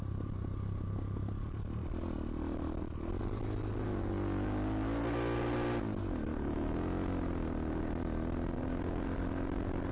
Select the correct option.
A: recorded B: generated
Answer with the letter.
A